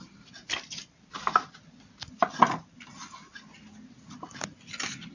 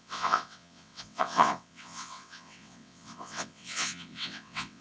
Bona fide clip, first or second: first